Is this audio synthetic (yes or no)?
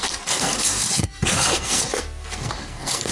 yes